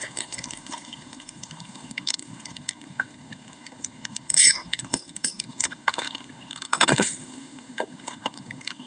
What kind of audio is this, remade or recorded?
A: remade